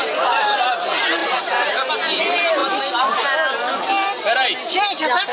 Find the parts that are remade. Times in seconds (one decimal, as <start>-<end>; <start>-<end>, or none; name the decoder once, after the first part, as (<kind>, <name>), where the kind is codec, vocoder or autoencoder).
1.2-1.9 (vocoder, BigVGAN v2)

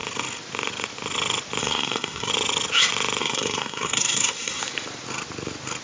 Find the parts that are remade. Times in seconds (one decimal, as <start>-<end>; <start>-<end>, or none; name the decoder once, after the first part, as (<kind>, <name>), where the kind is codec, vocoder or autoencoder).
1.6-2.3 (codec, SNAC); 3.2-4.6

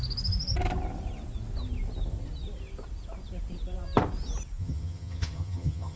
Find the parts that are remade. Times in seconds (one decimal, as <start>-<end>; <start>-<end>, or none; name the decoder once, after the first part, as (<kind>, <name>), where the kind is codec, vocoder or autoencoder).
4.6-6.0 (vocoder, HiFi-GAN)

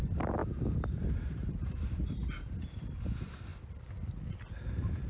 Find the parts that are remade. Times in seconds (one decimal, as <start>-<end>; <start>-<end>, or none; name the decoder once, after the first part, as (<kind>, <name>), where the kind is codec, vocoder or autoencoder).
0.0-0.4 (vocoder, BigVGAN v2); 1.0-2.2; 2.7-3.5; 4.1-5.1

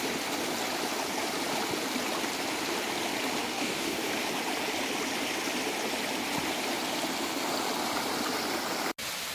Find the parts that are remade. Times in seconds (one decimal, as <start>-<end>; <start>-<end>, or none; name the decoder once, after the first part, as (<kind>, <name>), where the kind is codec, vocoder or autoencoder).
3.4-4.1 (codec, DAC)

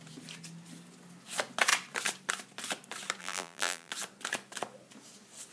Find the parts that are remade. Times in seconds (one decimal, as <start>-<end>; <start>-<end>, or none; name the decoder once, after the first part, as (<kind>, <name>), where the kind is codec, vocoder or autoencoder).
3.2-3.9 (vocoder, BigVGAN v2)

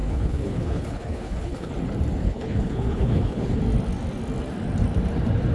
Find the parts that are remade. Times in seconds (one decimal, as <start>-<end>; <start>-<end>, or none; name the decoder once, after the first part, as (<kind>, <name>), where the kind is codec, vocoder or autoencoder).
0.0-1.7 (codec, HILCodec); 2.2-3.6

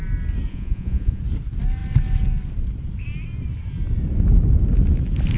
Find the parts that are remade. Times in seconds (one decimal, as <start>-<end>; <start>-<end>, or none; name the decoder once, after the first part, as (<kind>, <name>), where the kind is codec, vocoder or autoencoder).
0.5-1.2 (vocoder, Vocos)